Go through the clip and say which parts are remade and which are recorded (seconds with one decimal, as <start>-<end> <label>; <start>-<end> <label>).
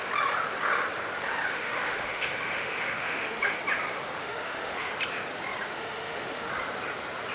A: 0.0-1.5 recorded; 1.5-3.6 remade; 3.6-4.2 recorded; 4.2-4.9 remade; 4.9-5.7 recorded; 5.7-6.5 remade; 6.5-7.3 recorded